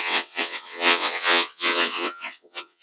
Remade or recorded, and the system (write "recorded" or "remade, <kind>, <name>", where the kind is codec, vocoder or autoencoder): remade, vocoder, WaveNeXt